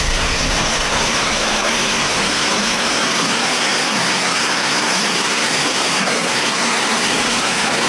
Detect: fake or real fake